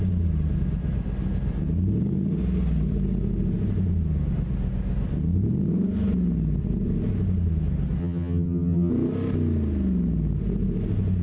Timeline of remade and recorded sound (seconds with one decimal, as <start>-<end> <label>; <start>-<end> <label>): 0.0-8.0 recorded; 8.0-8.9 remade; 8.9-11.2 recorded